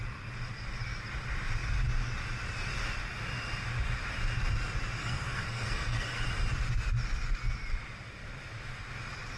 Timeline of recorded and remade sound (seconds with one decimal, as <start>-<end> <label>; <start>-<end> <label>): 0.0-5.0 recorded; 5.0-6.2 remade; 6.2-9.4 recorded